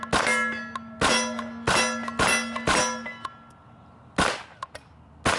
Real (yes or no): yes